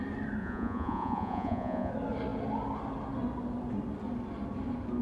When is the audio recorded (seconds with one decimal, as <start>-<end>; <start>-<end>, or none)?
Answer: 0.0-0.4; 1.9-5.0